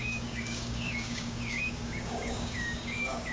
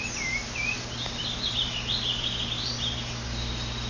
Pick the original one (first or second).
second